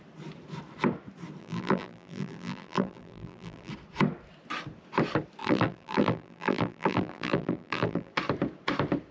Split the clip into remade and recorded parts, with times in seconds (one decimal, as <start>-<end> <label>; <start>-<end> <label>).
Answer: 0.0-1.4 recorded; 1.4-3.7 remade; 3.7-5.4 recorded; 5.4-8.1 remade; 8.1-9.1 recorded